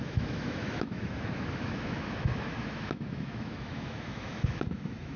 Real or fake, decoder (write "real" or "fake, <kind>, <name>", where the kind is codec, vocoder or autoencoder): fake, autoencoder, DAC-VAE